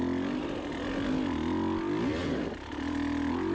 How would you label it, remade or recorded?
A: recorded